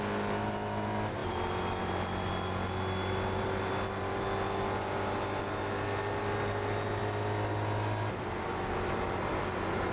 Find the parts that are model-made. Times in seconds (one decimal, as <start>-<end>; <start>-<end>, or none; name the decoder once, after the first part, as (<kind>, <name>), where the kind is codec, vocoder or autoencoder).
none